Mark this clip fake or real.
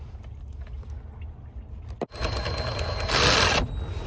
real